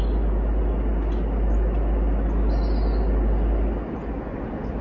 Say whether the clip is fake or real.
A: real